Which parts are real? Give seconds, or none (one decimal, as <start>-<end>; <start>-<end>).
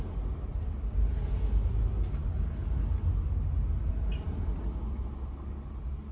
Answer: 0.0-6.1